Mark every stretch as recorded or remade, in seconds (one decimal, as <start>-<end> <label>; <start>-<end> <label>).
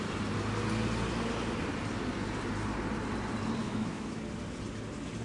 0.0-3.6 recorded; 3.6-4.2 remade; 4.2-5.2 recorded